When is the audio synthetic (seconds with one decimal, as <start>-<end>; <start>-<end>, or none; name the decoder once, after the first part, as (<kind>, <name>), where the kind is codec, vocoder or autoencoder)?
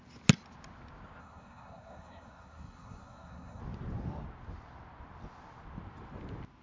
1.2-3.6 (codec, SNAC)